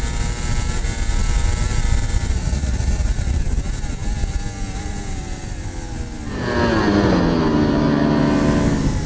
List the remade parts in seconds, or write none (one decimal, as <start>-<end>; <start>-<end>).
2.4-3.4